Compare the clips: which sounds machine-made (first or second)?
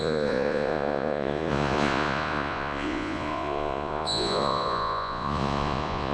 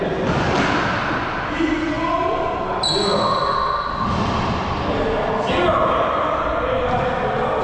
first